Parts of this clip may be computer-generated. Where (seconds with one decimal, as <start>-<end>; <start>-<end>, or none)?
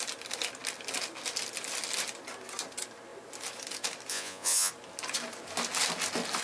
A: 4.1-4.7